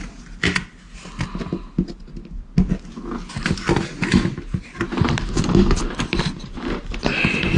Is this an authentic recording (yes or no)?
yes